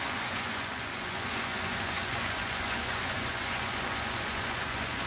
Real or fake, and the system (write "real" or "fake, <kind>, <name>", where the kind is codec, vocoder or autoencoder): fake, vocoder, Vocos